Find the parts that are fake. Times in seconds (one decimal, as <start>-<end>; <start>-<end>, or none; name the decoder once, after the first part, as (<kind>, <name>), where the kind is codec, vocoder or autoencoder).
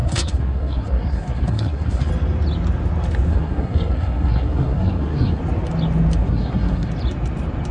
0.0-2.1 (codec, SNAC); 3.3-5.4; 6.2-6.9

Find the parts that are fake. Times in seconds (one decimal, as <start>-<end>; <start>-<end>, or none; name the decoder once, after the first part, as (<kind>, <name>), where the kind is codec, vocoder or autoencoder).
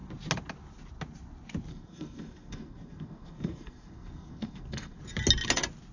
1.7-5.0 (codec, SNAC)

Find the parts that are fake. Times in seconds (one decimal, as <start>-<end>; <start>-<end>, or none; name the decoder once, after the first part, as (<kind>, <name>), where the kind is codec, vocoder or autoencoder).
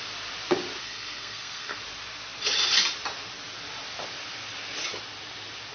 0.8-1.8 (codec, SNAC)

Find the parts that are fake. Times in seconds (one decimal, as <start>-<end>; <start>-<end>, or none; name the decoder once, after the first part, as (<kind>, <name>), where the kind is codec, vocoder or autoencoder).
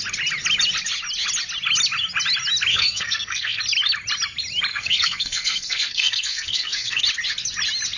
2.7-3.6 (codec, SNAC); 4.7-7.0